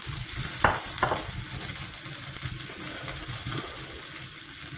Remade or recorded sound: recorded